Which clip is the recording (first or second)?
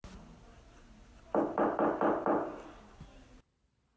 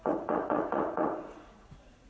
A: first